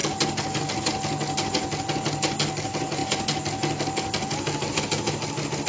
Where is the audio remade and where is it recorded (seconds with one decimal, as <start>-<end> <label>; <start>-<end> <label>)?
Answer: 0.0-5.7 recorded